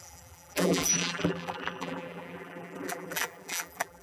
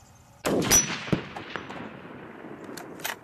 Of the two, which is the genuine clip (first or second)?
second